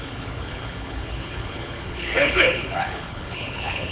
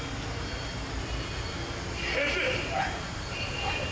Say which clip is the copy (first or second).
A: first